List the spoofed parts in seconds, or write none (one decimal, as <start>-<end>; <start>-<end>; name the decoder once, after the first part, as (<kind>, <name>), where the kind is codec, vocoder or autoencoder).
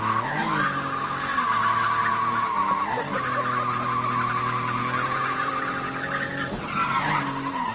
2.1-2.7 (vocoder, Vocos); 4.8-5.5